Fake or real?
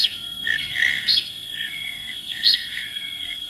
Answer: fake